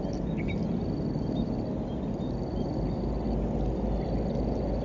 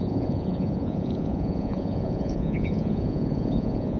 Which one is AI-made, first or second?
second